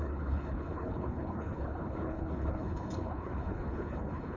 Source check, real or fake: fake